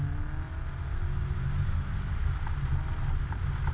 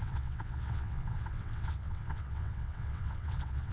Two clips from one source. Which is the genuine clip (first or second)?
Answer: first